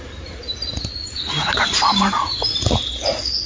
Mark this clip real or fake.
real